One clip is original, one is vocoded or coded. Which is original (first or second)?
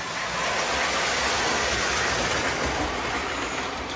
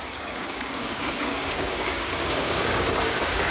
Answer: first